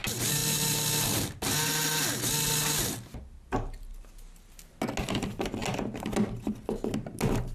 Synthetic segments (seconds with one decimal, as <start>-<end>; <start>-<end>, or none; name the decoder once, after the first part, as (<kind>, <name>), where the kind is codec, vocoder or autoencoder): none